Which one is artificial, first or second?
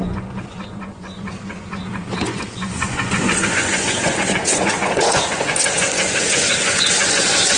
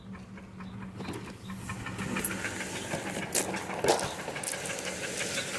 first